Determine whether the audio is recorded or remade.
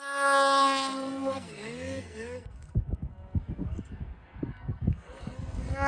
remade